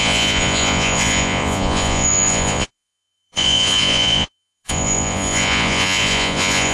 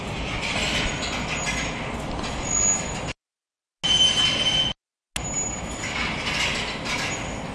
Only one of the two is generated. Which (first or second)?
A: first